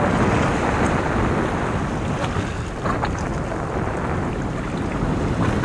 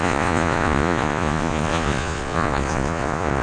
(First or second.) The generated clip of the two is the second